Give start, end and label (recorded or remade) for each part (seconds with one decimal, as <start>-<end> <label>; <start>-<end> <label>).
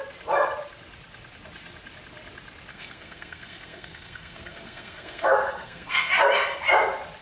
0.0-2.7 recorded; 2.7-6.1 remade; 6.1-7.2 recorded